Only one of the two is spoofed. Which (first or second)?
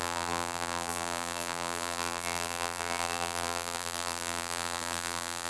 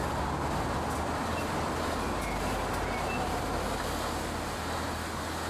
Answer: first